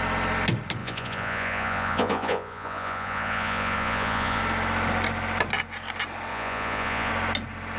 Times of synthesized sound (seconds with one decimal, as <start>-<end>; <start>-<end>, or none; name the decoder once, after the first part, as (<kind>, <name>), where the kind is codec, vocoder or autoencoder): 0.8-4.4 (vocoder, Vocos); 6.3-7.1